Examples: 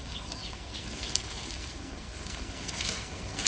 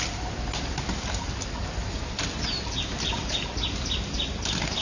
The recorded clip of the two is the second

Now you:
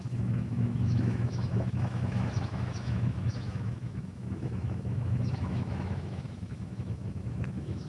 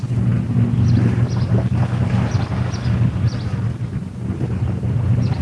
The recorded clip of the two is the second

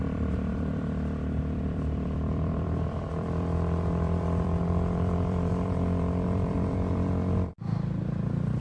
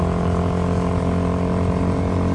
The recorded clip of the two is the second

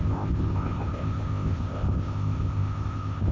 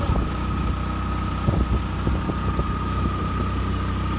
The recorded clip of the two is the second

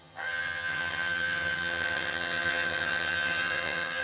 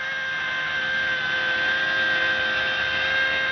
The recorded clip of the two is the second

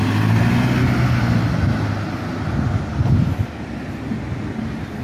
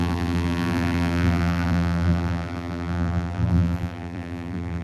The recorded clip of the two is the first